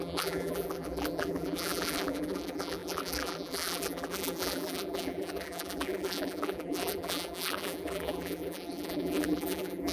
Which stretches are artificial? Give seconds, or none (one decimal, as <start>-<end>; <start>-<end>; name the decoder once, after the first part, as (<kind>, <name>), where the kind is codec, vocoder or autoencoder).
0.0-9.9 (vocoder, BigVGAN v2)